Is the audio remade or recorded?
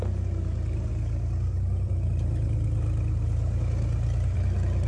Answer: recorded